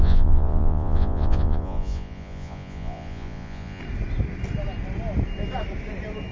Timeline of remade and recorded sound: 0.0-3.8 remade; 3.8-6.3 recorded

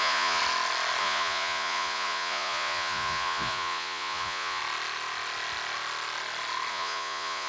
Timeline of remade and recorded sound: 0.0-0.4 remade; 0.4-1.0 recorded; 1.0-4.6 remade; 4.6-6.7 recorded; 6.7-7.5 remade

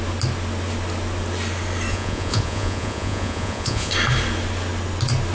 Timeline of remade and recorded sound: 0.0-1.9 recorded; 1.9-3.9 remade; 3.9-5.3 recorded

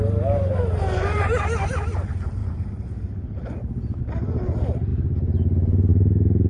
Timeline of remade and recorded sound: 0.0-6.5 recorded

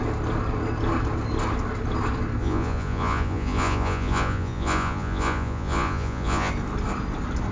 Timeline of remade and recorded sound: 0.0-2.4 recorded; 2.4-6.5 remade; 6.5-7.5 recorded

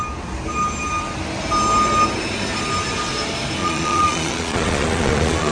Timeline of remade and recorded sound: 0.0-3.6 recorded; 3.6-5.5 remade